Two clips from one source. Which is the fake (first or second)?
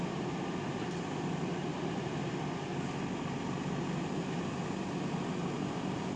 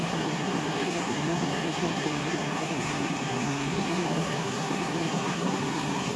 second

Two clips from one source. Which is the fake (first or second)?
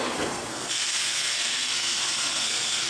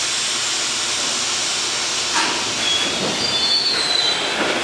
first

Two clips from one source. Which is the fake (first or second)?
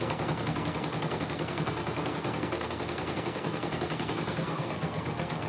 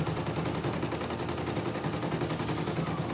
first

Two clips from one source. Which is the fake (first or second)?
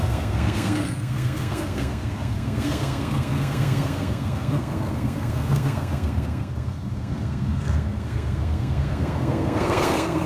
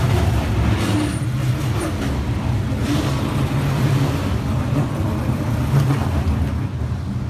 first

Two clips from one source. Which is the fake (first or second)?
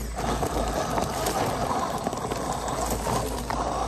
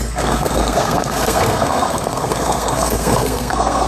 second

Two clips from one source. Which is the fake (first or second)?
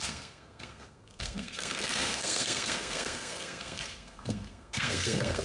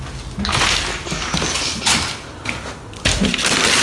first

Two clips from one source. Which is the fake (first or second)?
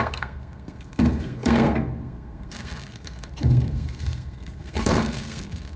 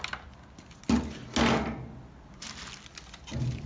first